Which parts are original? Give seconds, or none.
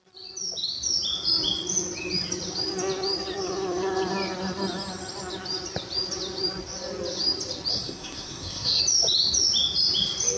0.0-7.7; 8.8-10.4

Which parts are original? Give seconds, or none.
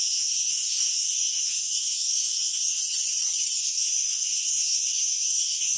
2.8-3.6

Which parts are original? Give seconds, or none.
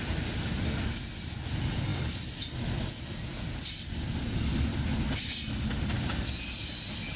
0.0-7.2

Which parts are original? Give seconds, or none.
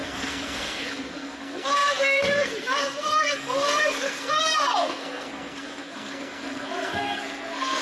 none